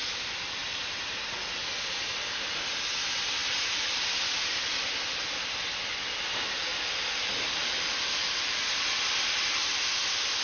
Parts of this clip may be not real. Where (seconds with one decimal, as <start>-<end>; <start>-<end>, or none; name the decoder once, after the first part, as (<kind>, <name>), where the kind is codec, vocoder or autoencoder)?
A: none